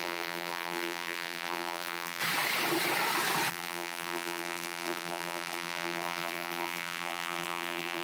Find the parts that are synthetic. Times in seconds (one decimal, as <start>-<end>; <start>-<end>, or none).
0.0-2.2; 3.5-8.0